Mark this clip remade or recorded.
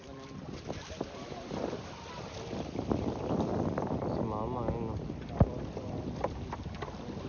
recorded